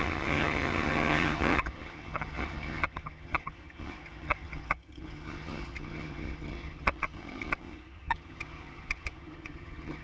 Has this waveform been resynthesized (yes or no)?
yes